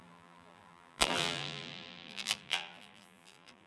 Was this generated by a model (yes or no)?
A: yes